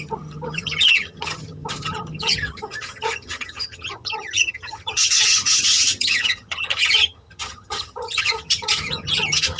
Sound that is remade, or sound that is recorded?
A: remade